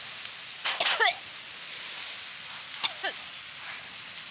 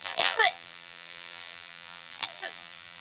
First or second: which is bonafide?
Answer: first